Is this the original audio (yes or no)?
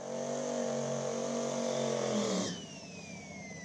yes